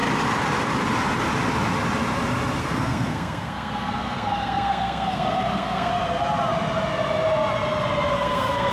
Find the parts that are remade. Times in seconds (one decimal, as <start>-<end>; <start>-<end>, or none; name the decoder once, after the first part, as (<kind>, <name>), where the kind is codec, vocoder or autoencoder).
2.6-5.9 (codec, SNAC); 8.1-8.7